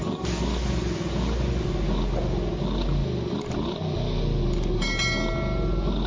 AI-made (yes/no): no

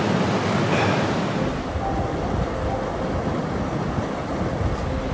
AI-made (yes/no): no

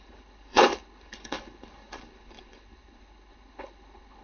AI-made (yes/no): yes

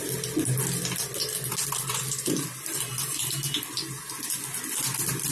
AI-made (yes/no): no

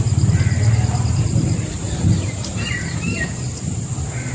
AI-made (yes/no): no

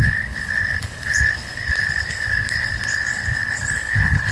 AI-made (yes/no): yes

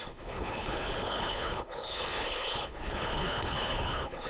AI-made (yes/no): yes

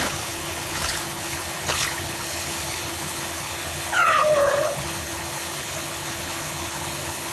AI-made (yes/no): yes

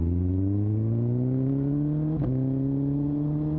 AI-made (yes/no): no